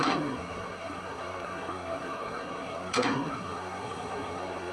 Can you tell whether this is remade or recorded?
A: remade